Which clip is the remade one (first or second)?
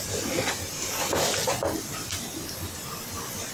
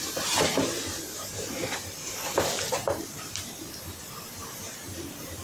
second